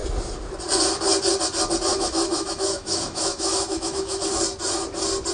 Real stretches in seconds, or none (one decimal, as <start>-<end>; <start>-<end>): 0.0-1.9; 4.2-5.3